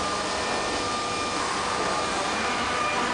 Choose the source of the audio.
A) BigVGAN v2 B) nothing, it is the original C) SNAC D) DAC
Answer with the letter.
B